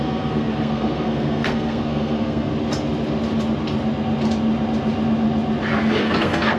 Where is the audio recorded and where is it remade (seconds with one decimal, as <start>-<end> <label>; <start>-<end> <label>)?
0.0-2.5 remade; 2.5-6.0 recorded; 6.0-6.6 remade

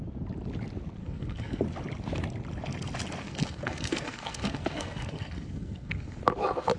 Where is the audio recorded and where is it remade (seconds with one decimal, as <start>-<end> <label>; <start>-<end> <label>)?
0.0-1.0 recorded; 1.0-1.6 remade; 1.6-3.2 recorded; 3.2-6.2 remade; 6.2-6.8 recorded

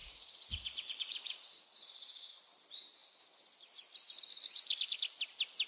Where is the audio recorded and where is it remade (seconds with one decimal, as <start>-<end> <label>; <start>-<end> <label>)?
0.0-2.3 remade; 2.3-5.7 recorded

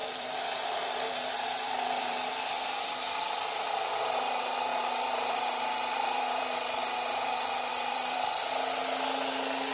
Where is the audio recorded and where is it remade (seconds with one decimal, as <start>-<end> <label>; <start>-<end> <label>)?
0.0-2.4 remade; 2.4-4.7 recorded; 4.7-6.8 remade; 6.8-7.7 recorded; 7.7-8.5 remade; 8.5-9.7 recorded

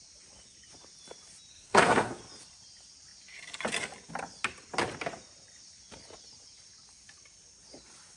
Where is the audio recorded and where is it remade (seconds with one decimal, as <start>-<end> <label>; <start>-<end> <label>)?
0.0-1.5 recorded; 1.5-2.2 remade; 2.2-8.2 recorded

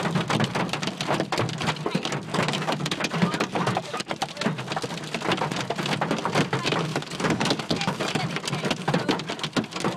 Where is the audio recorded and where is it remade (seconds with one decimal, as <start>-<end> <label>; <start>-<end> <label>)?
0.0-2.3 recorded; 2.3-4.2 remade; 4.2-6.9 recorded; 6.9-8.0 remade; 8.0-10.0 recorded